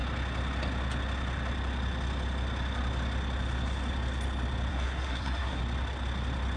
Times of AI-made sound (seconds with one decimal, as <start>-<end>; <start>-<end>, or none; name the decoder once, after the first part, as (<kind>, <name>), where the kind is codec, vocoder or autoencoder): 4.7-5.6 (codec, SNAC)